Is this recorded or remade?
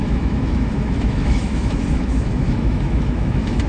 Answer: remade